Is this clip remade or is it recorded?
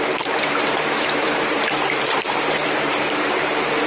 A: remade